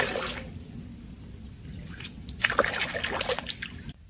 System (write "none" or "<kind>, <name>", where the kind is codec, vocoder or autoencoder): none